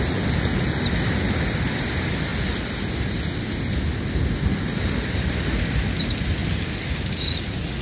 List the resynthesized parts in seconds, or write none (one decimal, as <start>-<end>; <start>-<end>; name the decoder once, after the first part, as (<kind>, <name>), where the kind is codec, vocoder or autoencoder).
none